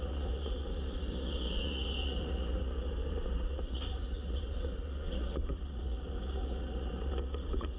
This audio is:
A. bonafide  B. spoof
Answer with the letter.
B